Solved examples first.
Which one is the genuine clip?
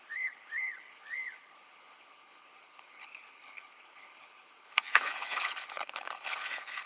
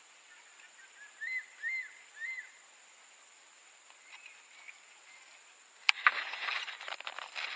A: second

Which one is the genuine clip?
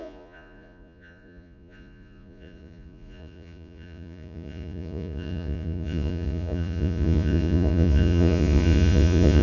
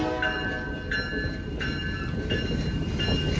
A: second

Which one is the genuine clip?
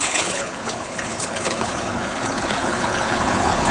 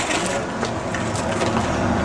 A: second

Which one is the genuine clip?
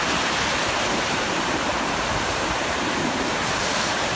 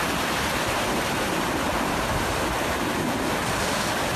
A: second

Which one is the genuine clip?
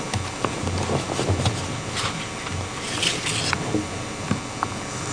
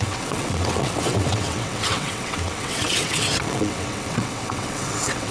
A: first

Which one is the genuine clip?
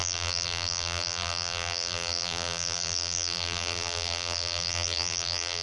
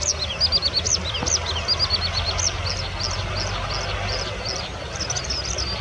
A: second